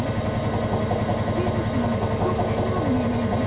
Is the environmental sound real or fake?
real